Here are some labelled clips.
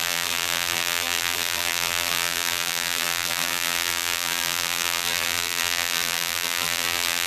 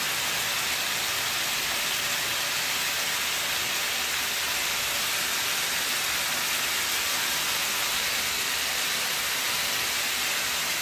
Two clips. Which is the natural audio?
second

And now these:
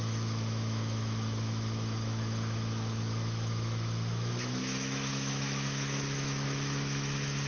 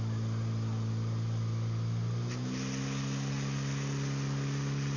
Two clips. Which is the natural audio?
second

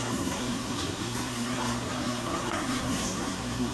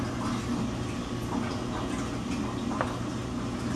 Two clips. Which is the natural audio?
second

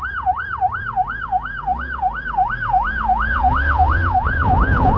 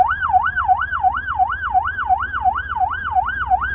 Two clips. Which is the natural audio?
second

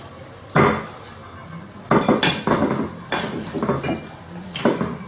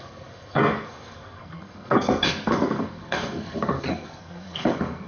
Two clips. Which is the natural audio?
first